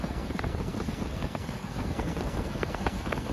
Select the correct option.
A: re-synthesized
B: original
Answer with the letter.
A